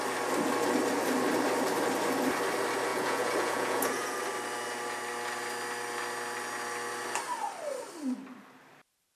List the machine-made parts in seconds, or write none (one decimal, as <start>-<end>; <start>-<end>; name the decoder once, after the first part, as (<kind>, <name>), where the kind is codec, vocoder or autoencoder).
2.9-4.2 (vocoder, Vocos)